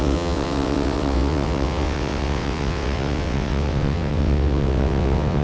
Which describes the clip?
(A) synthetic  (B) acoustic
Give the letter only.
A